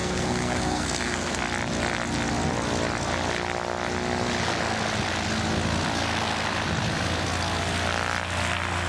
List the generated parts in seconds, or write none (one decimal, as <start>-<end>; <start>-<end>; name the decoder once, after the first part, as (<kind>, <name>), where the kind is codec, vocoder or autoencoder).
0.0-1.4 (codec, SNAC)